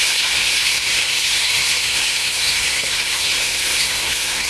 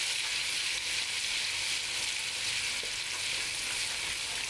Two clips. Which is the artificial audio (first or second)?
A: first